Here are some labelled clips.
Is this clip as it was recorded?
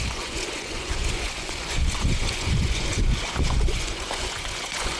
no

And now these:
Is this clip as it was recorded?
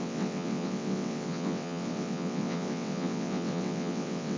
no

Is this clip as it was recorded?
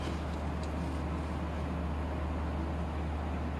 yes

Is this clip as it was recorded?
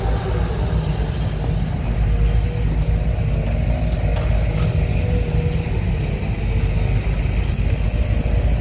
yes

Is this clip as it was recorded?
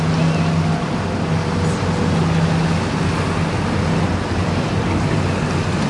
yes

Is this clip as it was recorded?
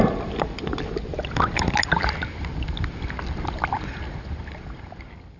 yes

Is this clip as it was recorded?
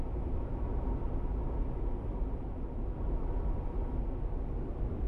no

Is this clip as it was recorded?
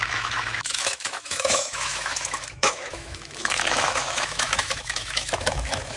no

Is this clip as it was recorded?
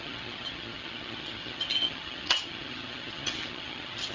no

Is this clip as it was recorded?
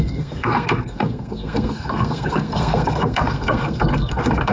no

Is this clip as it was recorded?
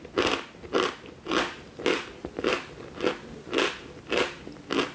yes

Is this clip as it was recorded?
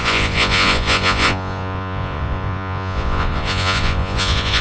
no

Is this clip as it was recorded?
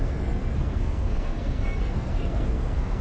no